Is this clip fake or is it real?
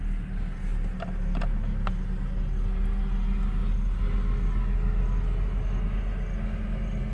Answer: real